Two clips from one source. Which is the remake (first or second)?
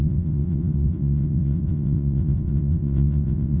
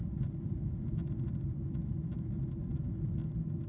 first